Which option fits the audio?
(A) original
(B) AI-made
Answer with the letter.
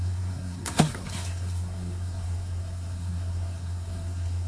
B